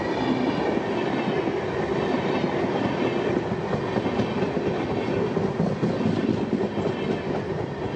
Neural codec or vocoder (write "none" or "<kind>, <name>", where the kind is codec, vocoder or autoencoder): none